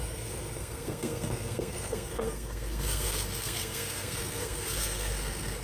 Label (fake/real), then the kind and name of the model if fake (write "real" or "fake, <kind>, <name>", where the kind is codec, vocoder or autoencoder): fake, codec, SNAC